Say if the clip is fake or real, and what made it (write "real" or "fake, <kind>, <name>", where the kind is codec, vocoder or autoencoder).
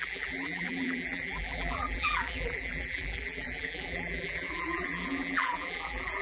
fake, vocoder, BigVGAN v2